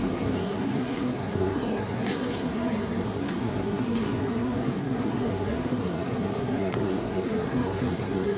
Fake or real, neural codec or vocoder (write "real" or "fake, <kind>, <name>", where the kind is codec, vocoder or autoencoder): fake, codec, SNAC